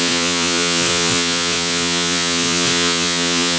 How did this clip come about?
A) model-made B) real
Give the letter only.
A